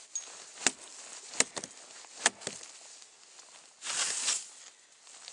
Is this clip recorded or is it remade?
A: recorded